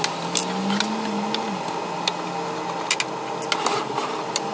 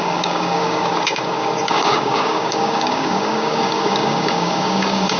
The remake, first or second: second